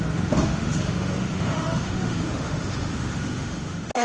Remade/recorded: remade